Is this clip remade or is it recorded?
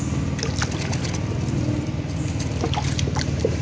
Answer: recorded